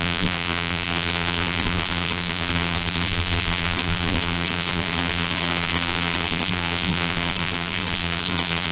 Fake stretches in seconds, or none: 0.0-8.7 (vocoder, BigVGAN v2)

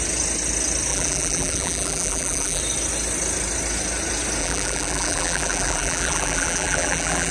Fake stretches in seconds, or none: 0.9-2.6 (vocoder, BigVGAN v2); 4.4-7.3

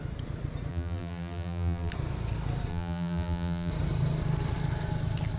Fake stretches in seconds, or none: 0.7-1.9 (vocoder, BigVGAN v2); 2.7-3.7

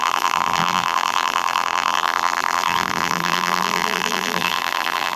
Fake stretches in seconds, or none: 0.0-5.2 (vocoder, BigVGAN v2)

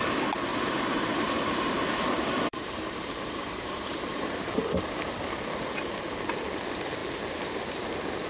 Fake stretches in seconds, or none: 0.5-4.5 (vocoder, BigVGAN v2)

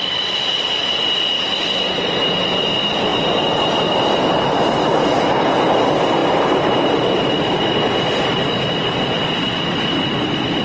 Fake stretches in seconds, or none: 3.1-3.7 (vocoder, BigVGAN v2); 6.2-7.3